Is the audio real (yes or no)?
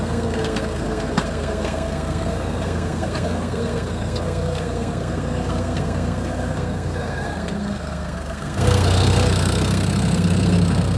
no